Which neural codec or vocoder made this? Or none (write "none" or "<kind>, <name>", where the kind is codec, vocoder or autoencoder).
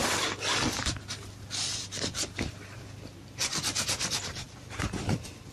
vocoder, BigVGAN v2